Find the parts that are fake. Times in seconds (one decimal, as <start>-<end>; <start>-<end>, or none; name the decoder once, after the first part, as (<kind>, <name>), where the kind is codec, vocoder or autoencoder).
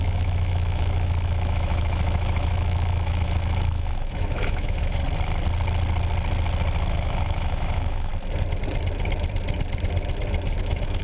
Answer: 0.0-5.0 (autoencoder, DAC-VAE); 6.9-8.1; 10.6-11.0